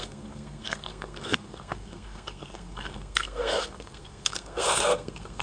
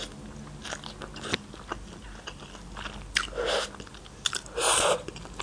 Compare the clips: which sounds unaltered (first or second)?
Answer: second